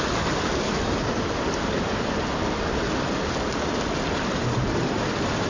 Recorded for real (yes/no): yes